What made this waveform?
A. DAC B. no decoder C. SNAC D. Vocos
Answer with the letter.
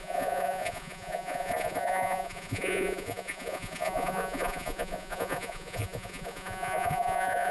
D